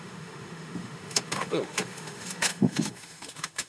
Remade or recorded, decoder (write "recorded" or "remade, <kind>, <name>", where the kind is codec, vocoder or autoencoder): remade, autoencoder, DAC-VAE